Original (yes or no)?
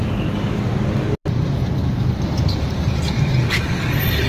yes